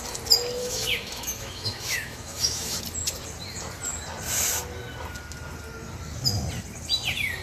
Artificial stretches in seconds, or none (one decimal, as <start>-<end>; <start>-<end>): 0.6-2.8